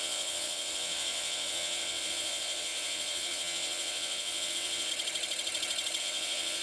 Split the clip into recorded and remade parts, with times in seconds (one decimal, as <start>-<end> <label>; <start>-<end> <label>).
0.0-4.9 remade; 4.9-6.0 recorded; 6.0-6.6 remade